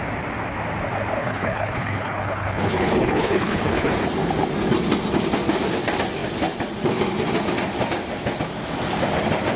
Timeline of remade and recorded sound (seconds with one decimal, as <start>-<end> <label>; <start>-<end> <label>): 0.0-1.2 recorded; 1.2-3.9 remade; 3.9-9.6 recorded